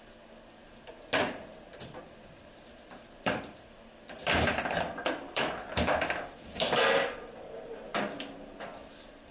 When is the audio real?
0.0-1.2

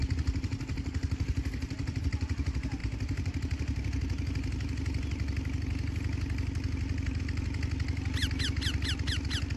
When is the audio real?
0.0-9.6

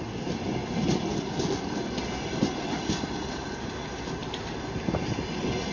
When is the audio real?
0.0-1.1; 3.5-5.7

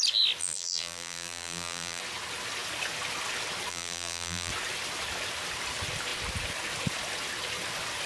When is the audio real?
0.0-0.4; 2.0-3.7; 4.5-8.1

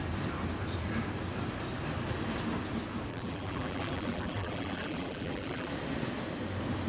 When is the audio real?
0.0-3.1; 5.7-6.9